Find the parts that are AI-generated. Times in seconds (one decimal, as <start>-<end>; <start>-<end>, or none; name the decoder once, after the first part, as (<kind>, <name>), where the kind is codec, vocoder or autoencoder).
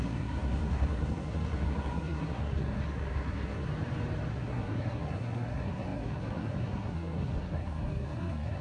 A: 0.0-3.7 (codec, SNAC); 4.3-8.6